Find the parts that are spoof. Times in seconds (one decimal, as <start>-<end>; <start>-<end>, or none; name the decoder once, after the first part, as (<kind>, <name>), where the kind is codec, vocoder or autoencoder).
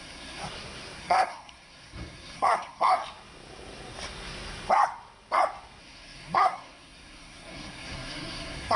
0.0-0.4 (codec, SNAC); 1.0-3.0; 5.8-8.8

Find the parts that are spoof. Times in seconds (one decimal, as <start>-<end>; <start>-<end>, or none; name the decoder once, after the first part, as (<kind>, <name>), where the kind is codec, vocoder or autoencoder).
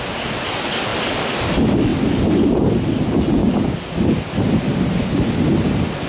none